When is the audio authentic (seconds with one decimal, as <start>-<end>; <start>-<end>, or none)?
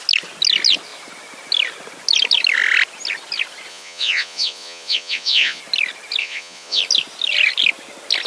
0.0-3.7; 5.6-6.2; 6.8-8.3